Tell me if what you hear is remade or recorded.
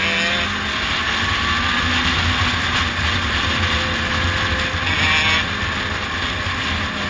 recorded